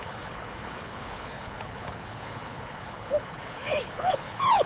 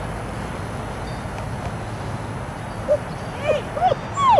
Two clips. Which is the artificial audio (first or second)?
first